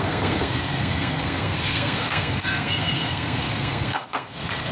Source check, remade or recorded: remade